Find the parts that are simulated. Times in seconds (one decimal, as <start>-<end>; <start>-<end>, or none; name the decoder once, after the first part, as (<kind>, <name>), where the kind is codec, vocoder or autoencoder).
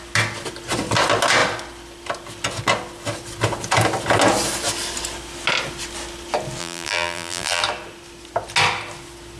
6.6-7.6 (vocoder, BigVGAN v2)